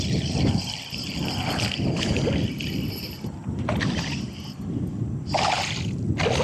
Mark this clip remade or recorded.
recorded